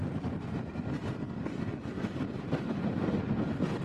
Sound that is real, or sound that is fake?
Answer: real